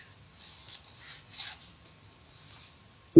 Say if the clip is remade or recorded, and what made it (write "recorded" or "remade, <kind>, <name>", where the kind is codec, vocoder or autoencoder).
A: recorded